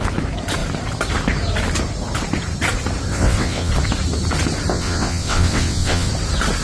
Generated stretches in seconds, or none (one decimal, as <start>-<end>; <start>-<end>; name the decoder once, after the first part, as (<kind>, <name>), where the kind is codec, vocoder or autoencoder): 3.1-3.7 (vocoder, WaveNeXt); 4.7-6.1